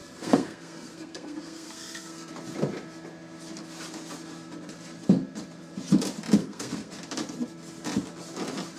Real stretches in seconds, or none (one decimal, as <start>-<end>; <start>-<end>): 2.3-6.4; 6.9-8.8